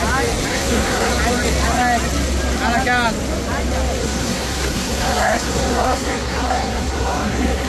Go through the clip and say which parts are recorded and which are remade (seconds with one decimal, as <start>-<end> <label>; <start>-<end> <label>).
0.0-0.5 recorded; 0.5-1.1 remade; 1.1-4.0 recorded; 4.0-7.7 remade

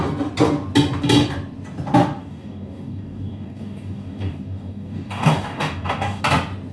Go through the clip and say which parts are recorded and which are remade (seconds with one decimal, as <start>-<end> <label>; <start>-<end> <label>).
0.0-2.2 recorded; 2.2-6.2 remade; 6.2-6.7 recorded

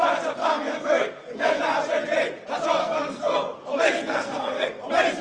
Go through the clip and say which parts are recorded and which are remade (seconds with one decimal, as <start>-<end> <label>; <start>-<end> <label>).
0.0-0.4 recorded; 0.4-1.6 remade; 1.6-2.8 recorded; 2.8-4.8 remade; 4.8-5.2 recorded